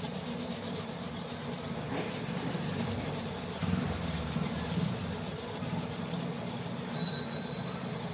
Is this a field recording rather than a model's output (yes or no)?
no